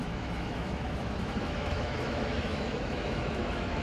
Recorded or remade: remade